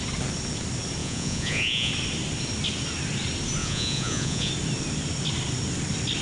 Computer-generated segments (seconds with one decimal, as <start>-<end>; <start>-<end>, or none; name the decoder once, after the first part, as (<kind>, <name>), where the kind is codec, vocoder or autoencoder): 1.0-1.9 (vocoder, Vocos); 3.6-4.5